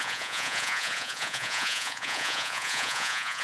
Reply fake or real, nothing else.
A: fake